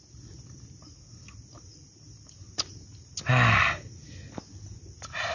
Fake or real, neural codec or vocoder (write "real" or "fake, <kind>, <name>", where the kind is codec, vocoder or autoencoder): real